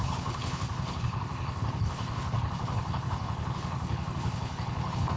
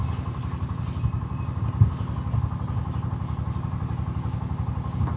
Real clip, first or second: second